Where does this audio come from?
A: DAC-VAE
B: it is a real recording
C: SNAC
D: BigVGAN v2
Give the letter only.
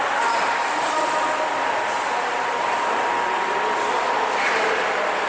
B